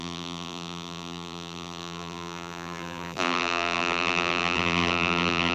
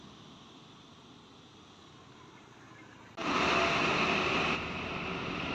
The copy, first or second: first